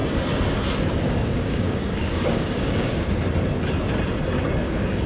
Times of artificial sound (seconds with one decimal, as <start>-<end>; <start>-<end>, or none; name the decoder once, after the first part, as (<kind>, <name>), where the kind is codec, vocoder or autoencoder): 0.9-3.2 (codec, DAC); 4.6-5.1